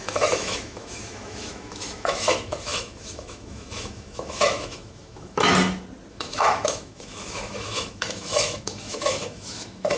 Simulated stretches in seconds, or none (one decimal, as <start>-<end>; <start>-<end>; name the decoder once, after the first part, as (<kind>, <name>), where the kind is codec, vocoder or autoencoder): 0.0-5.5 (autoencoder, DAC-VAE); 6.1-10.0